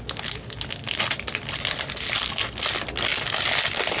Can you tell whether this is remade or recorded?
recorded